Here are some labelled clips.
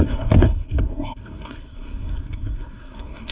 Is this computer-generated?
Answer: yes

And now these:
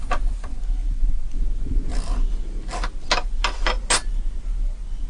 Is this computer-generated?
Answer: no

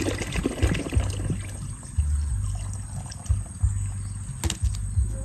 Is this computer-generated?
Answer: no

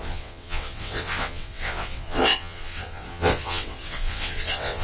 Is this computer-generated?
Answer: yes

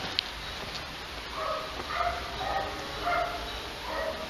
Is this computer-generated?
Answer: no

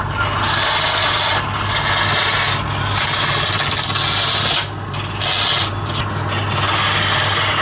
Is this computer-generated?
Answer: no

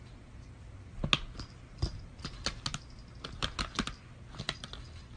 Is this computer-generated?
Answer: no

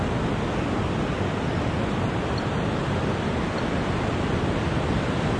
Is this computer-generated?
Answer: no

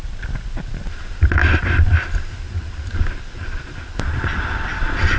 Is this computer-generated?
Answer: no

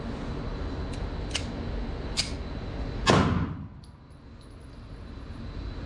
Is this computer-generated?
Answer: no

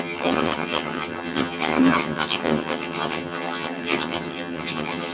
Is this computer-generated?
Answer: yes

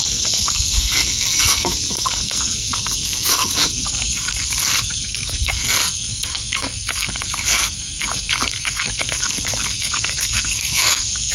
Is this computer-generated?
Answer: yes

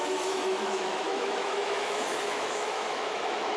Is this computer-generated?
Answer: yes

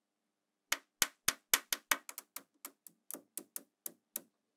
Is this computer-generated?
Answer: no